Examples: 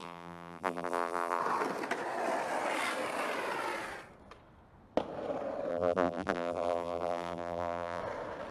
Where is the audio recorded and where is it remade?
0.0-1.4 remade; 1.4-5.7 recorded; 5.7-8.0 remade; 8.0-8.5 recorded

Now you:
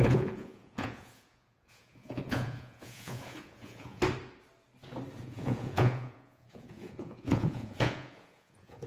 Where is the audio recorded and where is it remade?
0.0-4.0 remade; 4.0-5.2 recorded; 5.2-8.9 remade

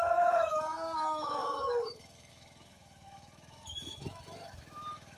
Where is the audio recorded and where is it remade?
0.0-5.2 remade

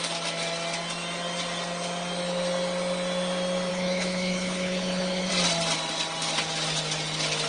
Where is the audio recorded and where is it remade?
0.0-3.7 recorded; 3.7-5.3 remade; 5.3-7.5 recorded

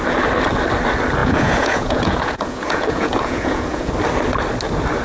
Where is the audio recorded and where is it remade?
0.0-1.2 recorded; 1.2-3.9 remade; 3.9-5.0 recorded

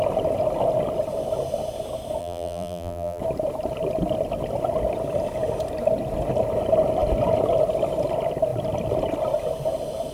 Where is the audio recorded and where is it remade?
0.0-2.2 recorded; 2.2-3.2 remade; 3.2-10.1 recorded

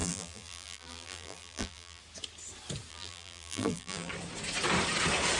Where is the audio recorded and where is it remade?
0.0-2.0 remade; 2.0-2.9 recorded; 2.9-4.1 remade; 4.1-5.4 recorded

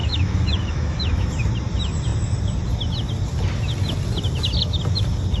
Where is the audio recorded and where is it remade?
0.0-1.3 remade; 1.3-5.4 recorded